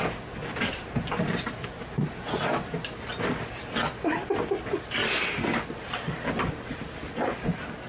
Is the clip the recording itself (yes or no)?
yes